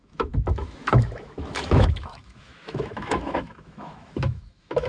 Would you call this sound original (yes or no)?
no